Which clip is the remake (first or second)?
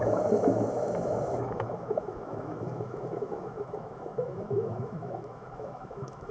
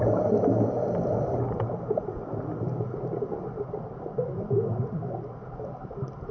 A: first